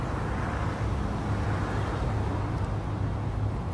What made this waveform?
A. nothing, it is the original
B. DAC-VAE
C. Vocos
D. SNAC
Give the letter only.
A